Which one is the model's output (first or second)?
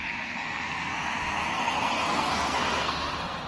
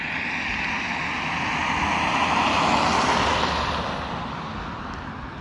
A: first